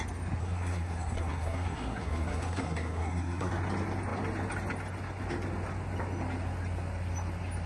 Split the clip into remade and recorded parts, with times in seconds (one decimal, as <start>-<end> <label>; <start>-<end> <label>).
0.0-0.4 recorded; 0.4-3.5 remade; 3.5-7.7 recorded